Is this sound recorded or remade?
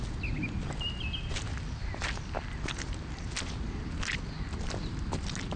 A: recorded